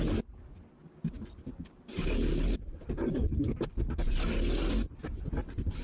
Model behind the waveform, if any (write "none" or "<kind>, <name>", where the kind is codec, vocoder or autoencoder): none